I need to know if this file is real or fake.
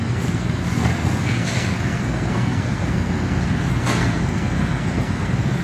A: fake